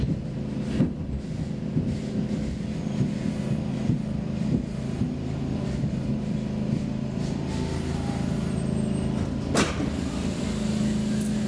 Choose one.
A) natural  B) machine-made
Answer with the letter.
A